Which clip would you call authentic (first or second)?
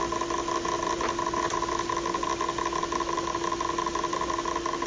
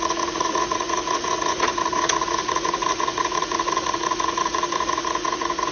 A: first